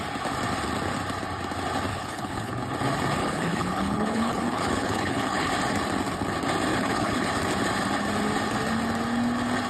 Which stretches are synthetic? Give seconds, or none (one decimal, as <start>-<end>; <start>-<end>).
1.9-2.5; 3.2-5.5; 6.7-7.3